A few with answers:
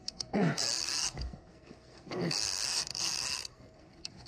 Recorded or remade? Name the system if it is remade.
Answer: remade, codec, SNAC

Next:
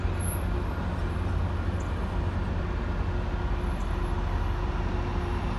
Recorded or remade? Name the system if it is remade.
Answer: recorded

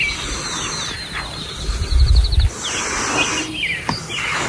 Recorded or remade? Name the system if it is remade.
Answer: recorded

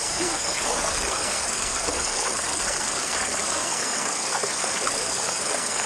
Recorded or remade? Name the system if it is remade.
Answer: remade, codec, SNAC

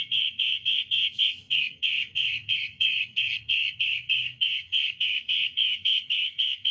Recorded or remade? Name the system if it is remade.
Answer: remade, codec, SNAC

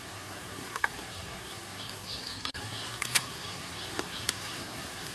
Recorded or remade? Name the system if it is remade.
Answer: remade, codec, SNAC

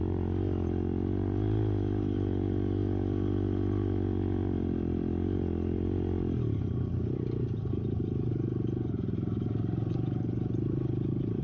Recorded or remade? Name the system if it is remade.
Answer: recorded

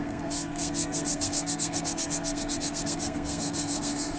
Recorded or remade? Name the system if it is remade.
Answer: remade, codec, SNAC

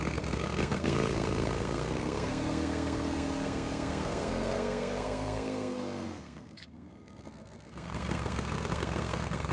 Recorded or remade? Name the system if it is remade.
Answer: remade, codec, SNAC